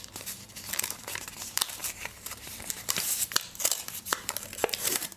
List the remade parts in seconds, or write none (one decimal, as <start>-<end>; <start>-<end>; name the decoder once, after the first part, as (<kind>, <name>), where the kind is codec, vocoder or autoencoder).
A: 0.0-5.2 (vocoder, BigVGAN v2)